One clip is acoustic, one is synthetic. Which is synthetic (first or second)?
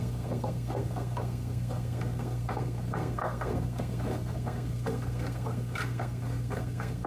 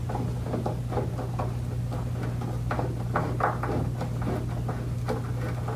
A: first